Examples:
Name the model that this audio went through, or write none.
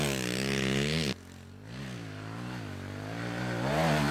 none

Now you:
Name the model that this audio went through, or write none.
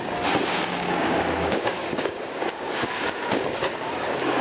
codec, DAC